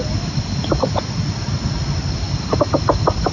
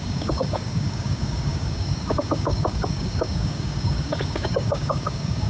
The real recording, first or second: first